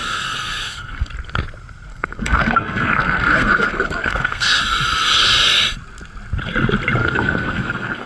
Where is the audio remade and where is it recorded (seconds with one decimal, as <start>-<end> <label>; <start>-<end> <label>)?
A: 0.0-1.1 remade; 1.1-1.9 recorded; 1.9-4.6 remade; 4.6-7.0 recorded; 7.0-8.1 remade